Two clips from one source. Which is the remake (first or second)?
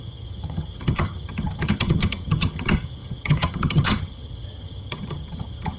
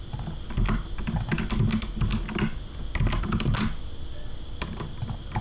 first